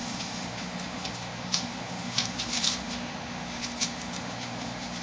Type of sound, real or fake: fake